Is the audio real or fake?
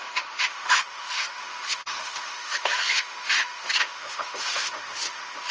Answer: fake